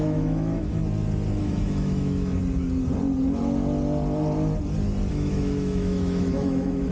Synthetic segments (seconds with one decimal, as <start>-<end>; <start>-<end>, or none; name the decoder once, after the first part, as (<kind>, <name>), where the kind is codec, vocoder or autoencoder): 0.0-0.8 (autoencoder, DAC-VAE); 1.4-2.4; 5.1-6.9